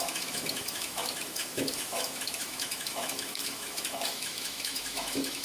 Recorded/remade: remade